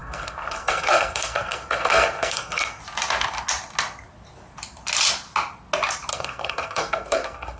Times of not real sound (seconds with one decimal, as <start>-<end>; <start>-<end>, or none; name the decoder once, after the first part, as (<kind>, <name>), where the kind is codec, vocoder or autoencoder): 0.0-2.8 (codec, SNAC); 6.1-7.6